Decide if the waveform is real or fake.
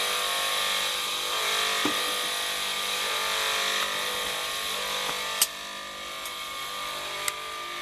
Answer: real